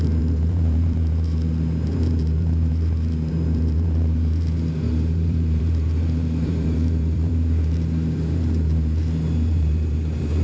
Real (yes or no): no